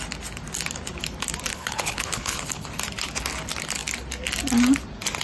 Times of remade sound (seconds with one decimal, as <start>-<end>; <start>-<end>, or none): 1.5-2.7

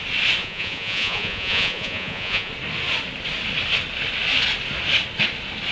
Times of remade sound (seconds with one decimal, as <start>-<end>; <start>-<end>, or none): 0.4-2.5

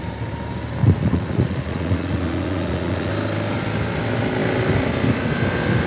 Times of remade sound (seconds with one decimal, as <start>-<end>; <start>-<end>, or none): 0.8-3.1